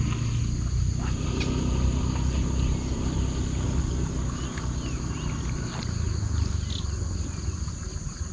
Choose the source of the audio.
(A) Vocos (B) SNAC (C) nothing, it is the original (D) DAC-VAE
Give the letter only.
C